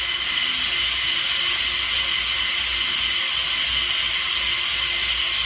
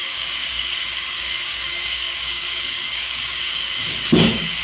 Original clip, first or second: first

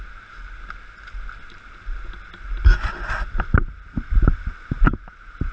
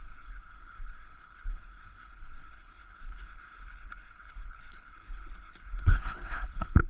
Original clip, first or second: first